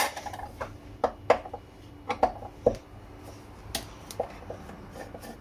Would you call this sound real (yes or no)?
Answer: yes